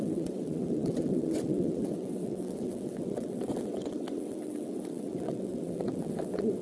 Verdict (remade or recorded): remade